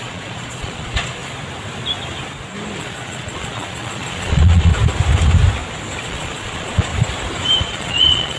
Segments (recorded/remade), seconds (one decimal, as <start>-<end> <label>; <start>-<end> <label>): 0.0-1.2 remade; 1.2-2.8 recorded; 2.8-4.7 remade; 4.7-6.0 recorded; 6.0-6.9 remade; 6.9-7.6 recorded; 7.6-8.4 remade